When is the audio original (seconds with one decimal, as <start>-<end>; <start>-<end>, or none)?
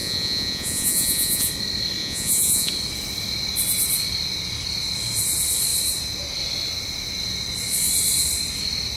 1.5-2.0; 2.7-9.0